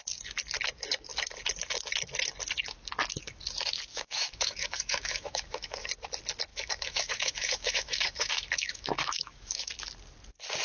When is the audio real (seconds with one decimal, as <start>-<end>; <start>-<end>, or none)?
0.0-3.9; 5.9-6.5; 9.7-10.6